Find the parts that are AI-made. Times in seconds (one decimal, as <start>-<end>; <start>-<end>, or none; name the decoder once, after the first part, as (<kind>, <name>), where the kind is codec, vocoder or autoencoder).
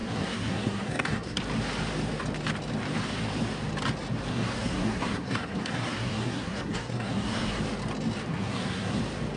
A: 0.0-1.4 (codec, SNAC); 4.3-7.6; 8.3-9.0